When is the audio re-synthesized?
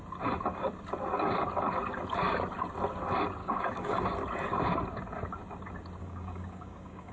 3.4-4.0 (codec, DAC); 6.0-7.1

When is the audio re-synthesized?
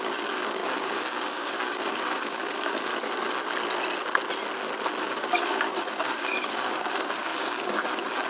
0.0-2.9 (codec, DAC); 5.0-8.3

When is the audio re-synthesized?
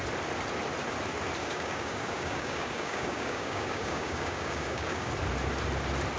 1.4-5.1 (codec, DAC)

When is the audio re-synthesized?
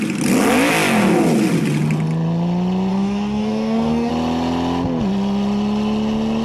2.9-4.1 (codec, DAC)